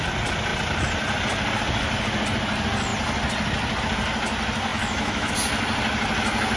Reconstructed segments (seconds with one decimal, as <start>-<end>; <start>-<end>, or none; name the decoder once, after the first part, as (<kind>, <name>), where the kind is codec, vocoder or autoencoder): 4.7-5.3 (autoencoder, DAC-VAE)